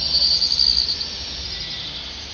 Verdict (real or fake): real